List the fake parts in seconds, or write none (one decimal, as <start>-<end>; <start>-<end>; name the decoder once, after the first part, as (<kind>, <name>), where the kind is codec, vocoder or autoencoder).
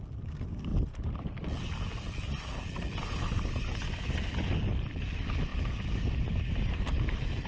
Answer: none